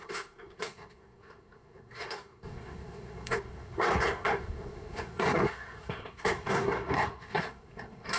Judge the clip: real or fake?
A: fake